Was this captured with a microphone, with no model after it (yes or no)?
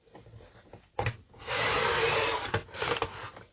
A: yes